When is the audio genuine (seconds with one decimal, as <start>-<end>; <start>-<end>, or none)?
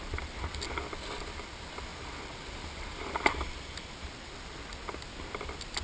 0.0-5.8